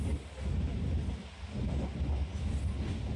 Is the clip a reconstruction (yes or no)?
no